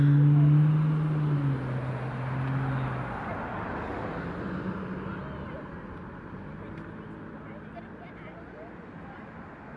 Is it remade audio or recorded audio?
recorded